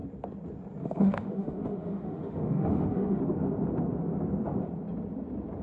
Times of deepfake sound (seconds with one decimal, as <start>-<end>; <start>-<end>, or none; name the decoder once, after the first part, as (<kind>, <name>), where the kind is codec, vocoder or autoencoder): 0.8-3.2 (autoencoder, DAC-VAE)